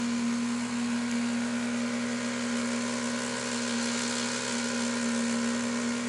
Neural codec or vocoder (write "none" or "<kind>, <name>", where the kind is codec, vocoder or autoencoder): none